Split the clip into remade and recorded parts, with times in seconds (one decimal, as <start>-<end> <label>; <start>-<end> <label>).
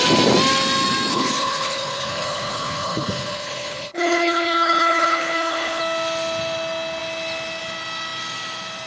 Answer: 0.0-1.1 recorded; 1.1-5.8 remade; 5.8-8.9 recorded